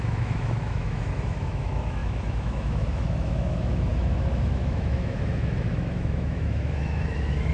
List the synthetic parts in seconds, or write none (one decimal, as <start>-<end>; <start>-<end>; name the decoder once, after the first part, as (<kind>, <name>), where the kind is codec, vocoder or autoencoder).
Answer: 0.0-7.5 (autoencoder, DAC-VAE)